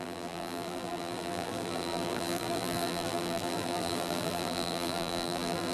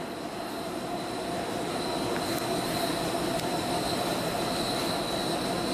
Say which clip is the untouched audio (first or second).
second